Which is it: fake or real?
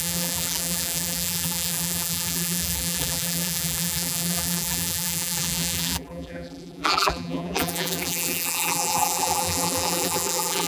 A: fake